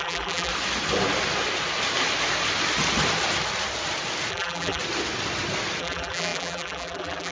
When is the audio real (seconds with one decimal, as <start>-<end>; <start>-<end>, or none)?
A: 0.5-4.3; 4.8-5.8